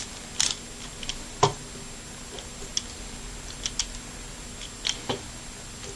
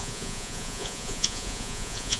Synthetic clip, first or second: second